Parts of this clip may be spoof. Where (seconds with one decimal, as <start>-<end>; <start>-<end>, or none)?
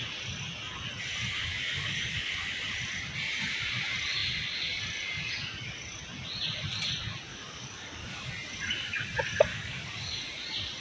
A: 1.5-2.3; 7.3-8.3; 9.5-10.2